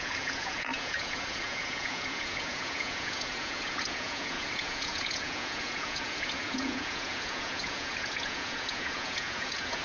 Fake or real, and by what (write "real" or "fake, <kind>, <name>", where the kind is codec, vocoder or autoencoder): fake, vocoder, Vocos